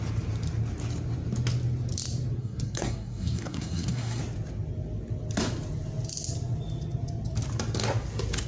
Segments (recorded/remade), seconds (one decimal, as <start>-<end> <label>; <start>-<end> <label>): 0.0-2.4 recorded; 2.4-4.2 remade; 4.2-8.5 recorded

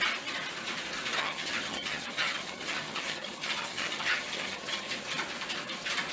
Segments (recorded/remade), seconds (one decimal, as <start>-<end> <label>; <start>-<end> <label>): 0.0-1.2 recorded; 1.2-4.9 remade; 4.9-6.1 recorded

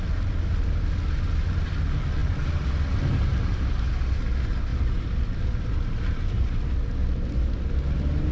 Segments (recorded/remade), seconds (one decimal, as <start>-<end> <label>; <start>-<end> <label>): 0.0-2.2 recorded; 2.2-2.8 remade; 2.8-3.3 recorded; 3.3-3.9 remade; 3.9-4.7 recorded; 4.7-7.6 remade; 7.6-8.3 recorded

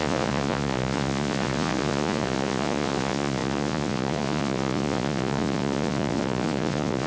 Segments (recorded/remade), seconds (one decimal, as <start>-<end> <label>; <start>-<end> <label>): 0.0-7.1 remade

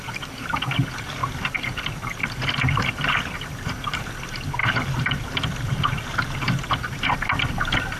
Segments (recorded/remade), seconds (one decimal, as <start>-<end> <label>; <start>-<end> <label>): 0.0-1.2 recorded; 1.2-4.1 remade; 4.1-4.6 recorded; 4.6-6.3 remade; 6.3-8.0 recorded

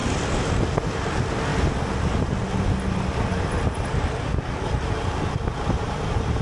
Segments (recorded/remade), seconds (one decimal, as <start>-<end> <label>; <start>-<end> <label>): 0.0-6.4 recorded

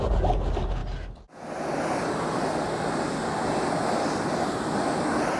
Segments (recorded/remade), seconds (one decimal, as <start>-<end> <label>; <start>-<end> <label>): 0.0-5.4 recorded

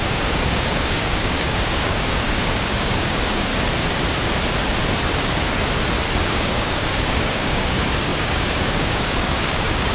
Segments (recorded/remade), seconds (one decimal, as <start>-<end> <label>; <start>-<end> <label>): 0.0-3.5 remade; 3.5-6.2 recorded; 6.2-9.9 remade